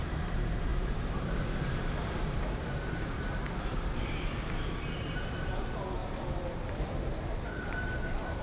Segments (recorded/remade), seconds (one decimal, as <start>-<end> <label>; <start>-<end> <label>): 0.0-6.0 remade; 6.0-7.6 recorded; 7.6-8.4 remade